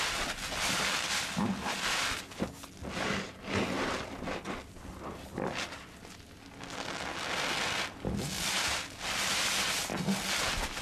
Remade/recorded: recorded